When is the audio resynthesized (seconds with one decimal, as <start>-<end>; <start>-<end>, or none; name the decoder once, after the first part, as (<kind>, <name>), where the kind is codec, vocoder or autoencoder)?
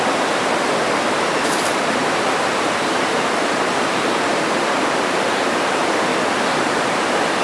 0.0-6.1 (vocoder, BigVGAN v2)